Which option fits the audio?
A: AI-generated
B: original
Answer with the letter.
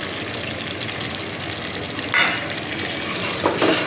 B